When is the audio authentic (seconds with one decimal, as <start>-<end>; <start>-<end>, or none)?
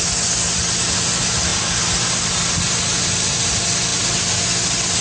0.0-5.0